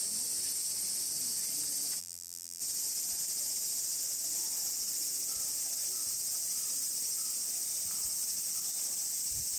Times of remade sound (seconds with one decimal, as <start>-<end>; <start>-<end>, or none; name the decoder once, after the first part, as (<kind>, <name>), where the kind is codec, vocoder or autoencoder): 2.0-2.6 (vocoder, BigVGAN v2)